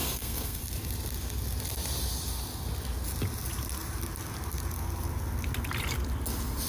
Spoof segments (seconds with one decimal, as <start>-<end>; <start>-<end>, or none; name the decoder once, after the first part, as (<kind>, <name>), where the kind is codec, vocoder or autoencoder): 0.0-0.6 (codec, SNAC)